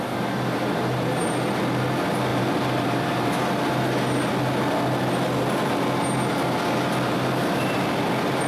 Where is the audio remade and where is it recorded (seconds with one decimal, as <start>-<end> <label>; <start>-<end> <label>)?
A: 0.0-2.3 recorded; 2.3-3.8 remade; 3.8-8.5 recorded